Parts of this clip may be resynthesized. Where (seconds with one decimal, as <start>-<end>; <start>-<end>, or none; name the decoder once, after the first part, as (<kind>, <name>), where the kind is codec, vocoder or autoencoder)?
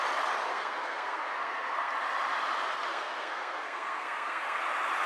0.5-1.9 (codec, SNAC); 2.9-4.6